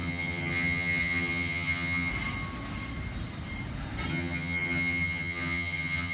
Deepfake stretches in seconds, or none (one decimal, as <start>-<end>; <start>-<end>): 0.0-2.1; 4.1-6.1